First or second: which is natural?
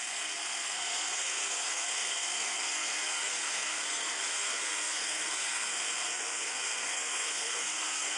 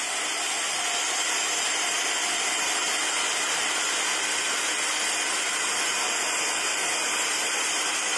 second